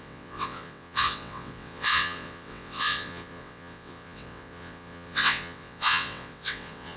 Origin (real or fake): fake